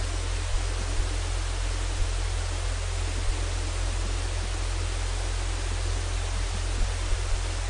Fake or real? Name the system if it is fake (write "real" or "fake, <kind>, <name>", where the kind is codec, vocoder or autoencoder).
real